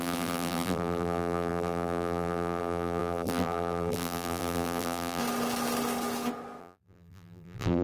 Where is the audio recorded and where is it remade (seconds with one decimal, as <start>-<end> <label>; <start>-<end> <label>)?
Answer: 0.0-5.2 remade; 5.2-6.6 recorded; 6.6-7.8 remade